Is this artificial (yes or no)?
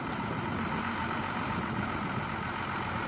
no